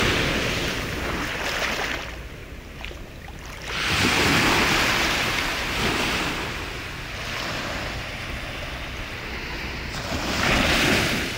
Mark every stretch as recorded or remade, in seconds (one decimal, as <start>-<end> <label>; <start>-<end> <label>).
0.0-2.4 recorded; 2.4-3.1 remade; 3.1-11.4 recorded